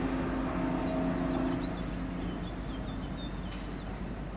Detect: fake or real real